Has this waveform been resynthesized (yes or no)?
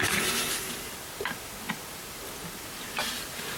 no